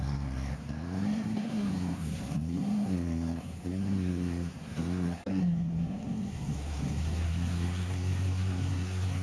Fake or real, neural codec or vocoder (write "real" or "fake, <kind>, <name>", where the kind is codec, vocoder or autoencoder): fake, codec, SNAC